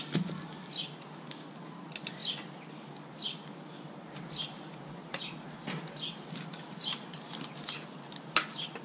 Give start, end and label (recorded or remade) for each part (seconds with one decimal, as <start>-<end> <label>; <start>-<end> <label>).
0.0-8.8 recorded